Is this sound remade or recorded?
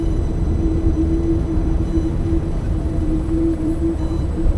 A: remade